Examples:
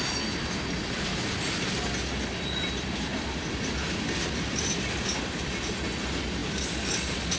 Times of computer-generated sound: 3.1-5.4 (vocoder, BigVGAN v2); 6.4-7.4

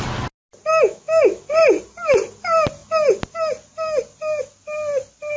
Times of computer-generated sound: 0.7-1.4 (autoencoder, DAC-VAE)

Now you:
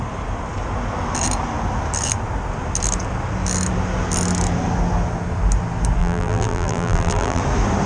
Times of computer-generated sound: 6.0-7.4 (vocoder, BigVGAN v2)

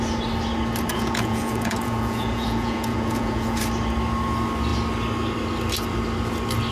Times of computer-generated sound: 0.9-3.6 (vocoder, Vocos)